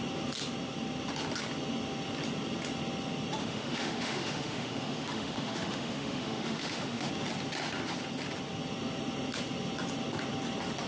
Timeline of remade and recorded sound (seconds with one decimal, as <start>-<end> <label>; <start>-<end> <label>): 0.0-3.4 recorded; 3.4-7.1 remade; 7.1-10.9 recorded